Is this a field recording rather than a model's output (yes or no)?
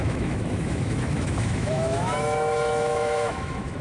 no